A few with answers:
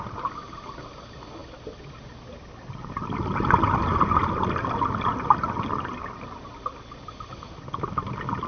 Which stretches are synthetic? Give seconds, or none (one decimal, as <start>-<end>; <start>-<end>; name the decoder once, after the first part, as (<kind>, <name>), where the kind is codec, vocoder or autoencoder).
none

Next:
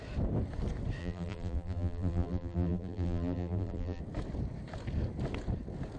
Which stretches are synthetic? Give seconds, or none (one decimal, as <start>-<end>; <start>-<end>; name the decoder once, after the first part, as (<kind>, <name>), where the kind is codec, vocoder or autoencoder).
1.0-4.0 (vocoder, BigVGAN v2)

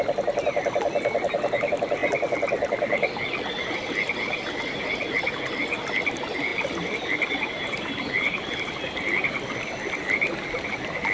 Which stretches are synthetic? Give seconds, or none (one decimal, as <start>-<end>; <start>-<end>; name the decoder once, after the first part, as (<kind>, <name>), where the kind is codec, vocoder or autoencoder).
none

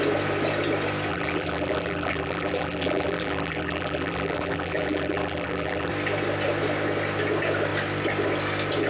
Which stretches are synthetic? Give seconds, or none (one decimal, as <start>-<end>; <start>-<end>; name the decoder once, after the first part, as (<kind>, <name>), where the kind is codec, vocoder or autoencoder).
1.1-5.9 (vocoder, BigVGAN v2)

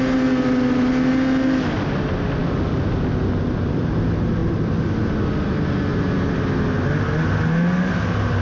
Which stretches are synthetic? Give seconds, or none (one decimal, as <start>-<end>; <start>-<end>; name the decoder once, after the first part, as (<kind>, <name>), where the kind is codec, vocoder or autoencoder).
4.4-5.3 (vocoder, BigVGAN v2); 5.9-6.4

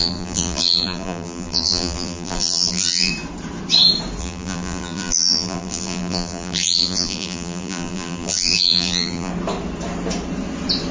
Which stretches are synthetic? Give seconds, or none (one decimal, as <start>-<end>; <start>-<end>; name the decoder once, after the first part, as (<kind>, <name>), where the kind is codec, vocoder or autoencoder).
0.0-3.1 (vocoder, BigVGAN v2); 4.2-9.3

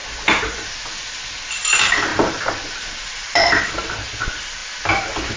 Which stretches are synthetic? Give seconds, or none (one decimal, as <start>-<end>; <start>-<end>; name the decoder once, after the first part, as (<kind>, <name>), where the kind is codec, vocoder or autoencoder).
2.1-3.7 (vocoder, BigVGAN v2)